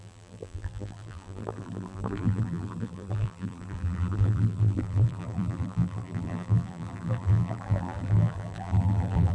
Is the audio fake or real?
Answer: fake